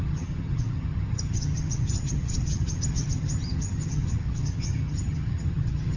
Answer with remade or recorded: remade